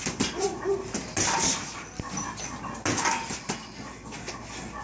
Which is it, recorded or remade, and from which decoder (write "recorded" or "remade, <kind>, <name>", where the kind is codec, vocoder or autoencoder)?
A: recorded